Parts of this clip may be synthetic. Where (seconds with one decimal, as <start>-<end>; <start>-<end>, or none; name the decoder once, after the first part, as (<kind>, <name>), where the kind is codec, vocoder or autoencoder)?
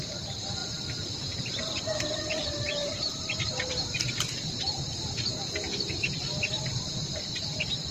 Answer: 0.0-7.9 (vocoder, BigVGAN v2)